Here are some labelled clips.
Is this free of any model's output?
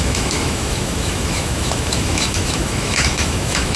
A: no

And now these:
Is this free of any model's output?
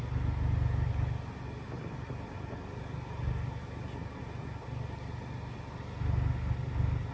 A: yes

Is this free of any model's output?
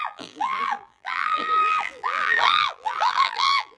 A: no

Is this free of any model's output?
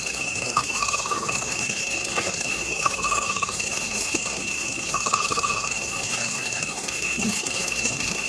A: no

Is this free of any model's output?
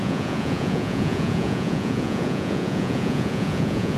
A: no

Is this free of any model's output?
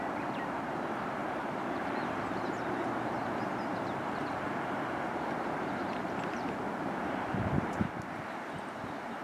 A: no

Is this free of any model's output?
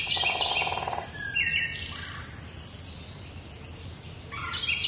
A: yes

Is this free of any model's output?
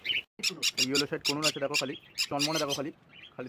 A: yes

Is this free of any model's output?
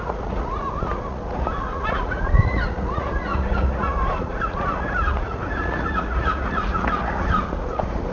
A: no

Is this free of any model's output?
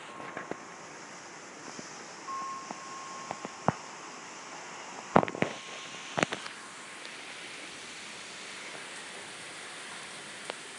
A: yes